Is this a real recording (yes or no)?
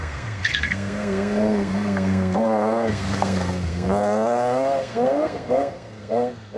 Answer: no